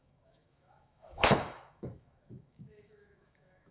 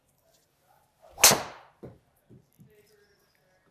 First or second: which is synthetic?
first